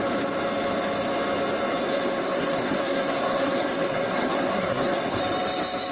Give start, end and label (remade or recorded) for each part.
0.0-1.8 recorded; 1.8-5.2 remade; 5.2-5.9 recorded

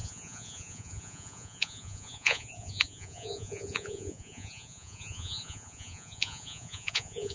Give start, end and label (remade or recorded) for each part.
0.0-7.3 remade